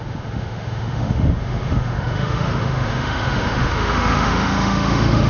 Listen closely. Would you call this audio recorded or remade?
remade